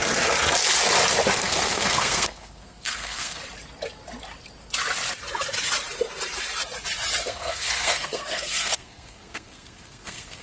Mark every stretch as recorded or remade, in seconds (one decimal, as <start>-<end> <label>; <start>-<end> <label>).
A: 0.0-1.4 recorded; 1.4-3.4 remade; 3.4-7.2 recorded; 7.2-10.4 remade

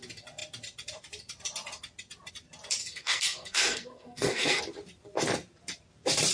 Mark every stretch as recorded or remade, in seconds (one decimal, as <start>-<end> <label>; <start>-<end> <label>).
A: 0.0-2.8 recorded; 2.8-4.6 remade; 4.6-6.3 recorded